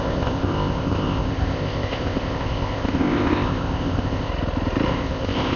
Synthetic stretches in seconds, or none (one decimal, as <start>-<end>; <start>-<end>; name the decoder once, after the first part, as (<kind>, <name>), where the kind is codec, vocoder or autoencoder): 0.0-4.3 (codec, ZipCodec); 4.9-5.6